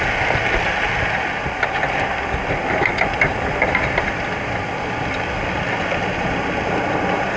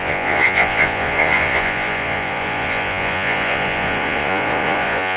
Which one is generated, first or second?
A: second